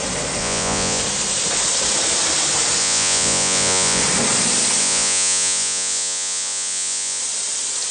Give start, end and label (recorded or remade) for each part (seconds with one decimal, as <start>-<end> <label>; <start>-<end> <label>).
0.0-0.4 recorded; 0.4-1.0 remade; 1.0-2.8 recorded; 2.8-4.0 remade; 4.0-4.8 recorded; 4.8-7.2 remade; 7.2-7.9 recorded